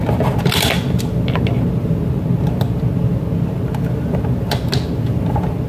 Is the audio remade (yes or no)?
no